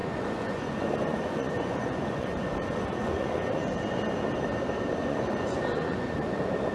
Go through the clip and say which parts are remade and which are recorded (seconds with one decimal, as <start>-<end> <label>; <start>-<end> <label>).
0.0-4.0 remade; 4.0-5.0 recorded; 5.0-6.7 remade

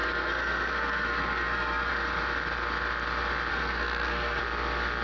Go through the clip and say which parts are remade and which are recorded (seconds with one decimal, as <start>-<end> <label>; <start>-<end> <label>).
0.0-1.9 remade; 1.9-3.5 recorded; 3.5-4.4 remade; 4.4-5.0 recorded

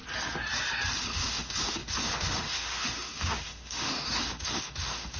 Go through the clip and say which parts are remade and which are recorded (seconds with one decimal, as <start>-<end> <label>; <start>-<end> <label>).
0.0-1.1 recorded; 1.1-5.2 remade

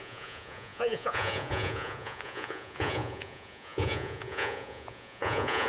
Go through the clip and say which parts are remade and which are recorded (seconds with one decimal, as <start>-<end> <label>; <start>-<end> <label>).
0.0-5.7 remade

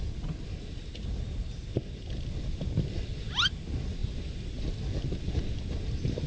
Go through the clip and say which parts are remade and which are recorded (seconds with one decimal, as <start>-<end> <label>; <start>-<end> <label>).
0.0-6.3 recorded

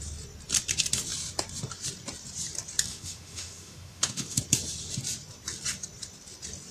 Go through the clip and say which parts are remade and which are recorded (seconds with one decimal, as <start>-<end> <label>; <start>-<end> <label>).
0.0-2.9 recorded; 2.9-4.4 remade; 4.4-6.7 recorded

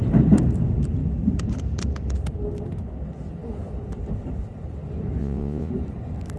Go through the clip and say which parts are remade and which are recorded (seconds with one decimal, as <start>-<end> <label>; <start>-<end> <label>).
0.0-5.2 recorded; 5.2-5.7 remade; 5.7-6.4 recorded